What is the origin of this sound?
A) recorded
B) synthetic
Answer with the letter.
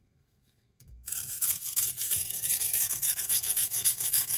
B